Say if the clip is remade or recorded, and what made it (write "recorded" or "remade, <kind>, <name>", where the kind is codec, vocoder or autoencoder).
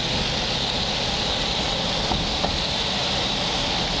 recorded